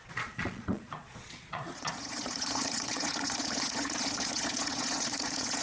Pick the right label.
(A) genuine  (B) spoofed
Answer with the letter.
B